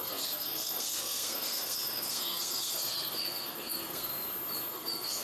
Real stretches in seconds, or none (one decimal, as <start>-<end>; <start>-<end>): 4.1-4.7

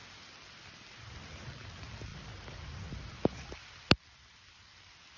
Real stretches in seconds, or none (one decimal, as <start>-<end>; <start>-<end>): 0.0-2.1; 3.1-5.2

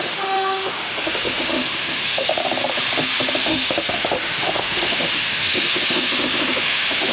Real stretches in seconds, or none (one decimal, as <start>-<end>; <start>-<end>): 2.4-3.4

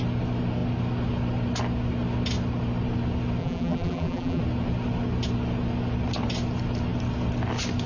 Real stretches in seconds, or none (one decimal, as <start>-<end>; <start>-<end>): 0.0-3.4; 4.4-7.9

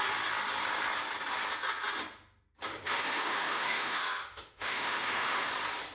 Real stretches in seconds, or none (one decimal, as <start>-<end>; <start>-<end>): 0.0-2.7; 5.5-5.9

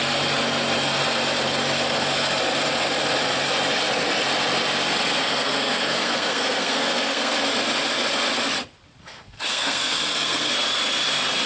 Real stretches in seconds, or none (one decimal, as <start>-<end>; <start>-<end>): 0.0-5.2; 7.4-9.1; 10.5-11.5

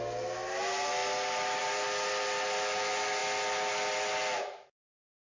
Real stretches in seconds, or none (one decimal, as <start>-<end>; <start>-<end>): 0.0-5.2